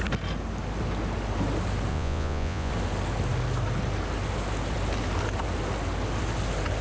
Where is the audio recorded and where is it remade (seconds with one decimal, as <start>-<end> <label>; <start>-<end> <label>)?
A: 0.0-1.9 recorded; 1.9-2.7 remade; 2.7-6.8 recorded